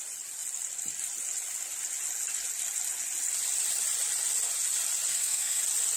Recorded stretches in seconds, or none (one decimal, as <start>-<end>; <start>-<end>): 0.0-5.1; 5.6-6.0